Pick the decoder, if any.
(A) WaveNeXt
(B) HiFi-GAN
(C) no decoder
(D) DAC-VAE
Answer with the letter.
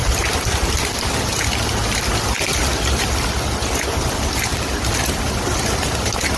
C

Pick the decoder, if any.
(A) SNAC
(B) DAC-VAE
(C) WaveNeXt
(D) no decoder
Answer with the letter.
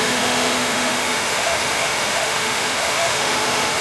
B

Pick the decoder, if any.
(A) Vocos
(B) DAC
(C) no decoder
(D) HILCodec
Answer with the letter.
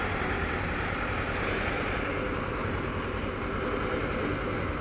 C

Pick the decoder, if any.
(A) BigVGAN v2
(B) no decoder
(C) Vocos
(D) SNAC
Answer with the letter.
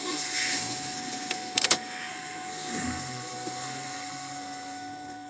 D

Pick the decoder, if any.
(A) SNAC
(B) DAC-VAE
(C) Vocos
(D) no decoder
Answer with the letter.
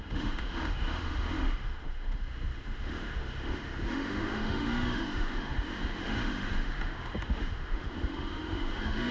B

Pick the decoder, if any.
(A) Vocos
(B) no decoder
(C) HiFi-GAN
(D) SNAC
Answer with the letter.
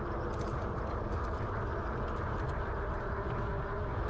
B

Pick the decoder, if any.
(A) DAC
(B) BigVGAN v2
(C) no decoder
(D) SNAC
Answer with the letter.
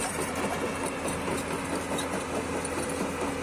C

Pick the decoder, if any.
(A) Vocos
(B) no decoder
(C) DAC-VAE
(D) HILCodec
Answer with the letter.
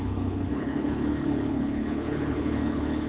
D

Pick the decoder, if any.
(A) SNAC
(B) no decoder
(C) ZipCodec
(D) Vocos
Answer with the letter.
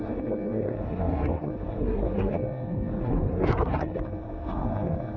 A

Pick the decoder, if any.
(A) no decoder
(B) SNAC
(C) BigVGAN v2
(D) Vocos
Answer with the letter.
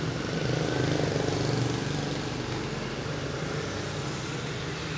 A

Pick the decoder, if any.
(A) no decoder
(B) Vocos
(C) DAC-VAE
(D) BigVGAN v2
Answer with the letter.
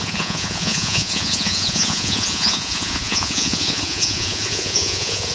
B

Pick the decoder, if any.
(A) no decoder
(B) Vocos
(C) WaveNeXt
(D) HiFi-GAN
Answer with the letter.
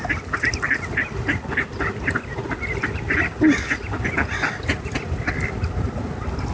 A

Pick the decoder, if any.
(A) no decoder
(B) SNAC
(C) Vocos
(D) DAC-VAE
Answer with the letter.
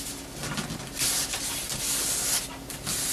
A